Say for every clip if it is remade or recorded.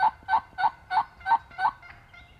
recorded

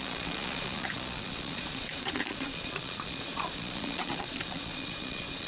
remade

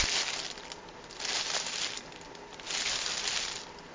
recorded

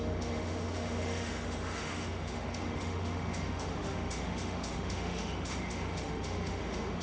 remade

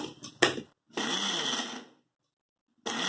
recorded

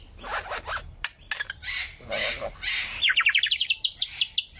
recorded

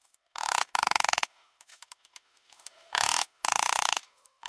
remade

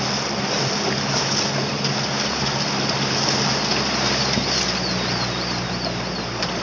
recorded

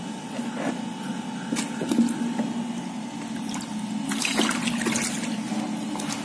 recorded